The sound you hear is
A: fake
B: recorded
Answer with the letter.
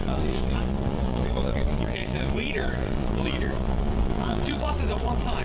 A